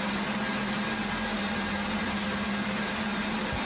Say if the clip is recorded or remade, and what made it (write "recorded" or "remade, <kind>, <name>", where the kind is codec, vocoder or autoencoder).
recorded